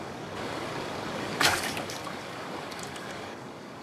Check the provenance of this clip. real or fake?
fake